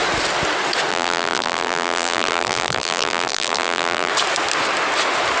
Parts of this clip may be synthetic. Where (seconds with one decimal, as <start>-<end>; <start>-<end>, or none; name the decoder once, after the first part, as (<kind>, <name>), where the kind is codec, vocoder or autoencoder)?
0.9-4.1 (vocoder, BigVGAN v2)